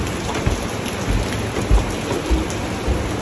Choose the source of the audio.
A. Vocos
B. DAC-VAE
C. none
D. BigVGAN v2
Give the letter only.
C